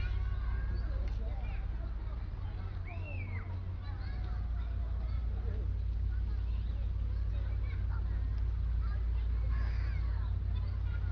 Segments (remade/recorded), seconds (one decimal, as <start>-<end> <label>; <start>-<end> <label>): 0.0-11.1 recorded